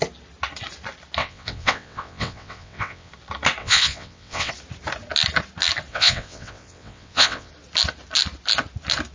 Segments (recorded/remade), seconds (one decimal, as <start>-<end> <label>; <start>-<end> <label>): 0.0-1.2 recorded; 1.2-3.1 remade; 3.1-3.6 recorded; 3.6-4.5 remade; 4.5-5.9 recorded; 5.9-7.5 remade; 7.5-9.1 recorded